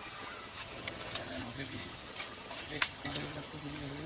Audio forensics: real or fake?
fake